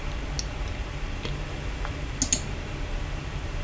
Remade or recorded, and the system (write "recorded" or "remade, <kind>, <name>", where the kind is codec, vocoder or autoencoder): recorded